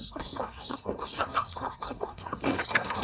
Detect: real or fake fake